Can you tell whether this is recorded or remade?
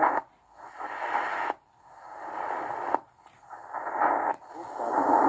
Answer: recorded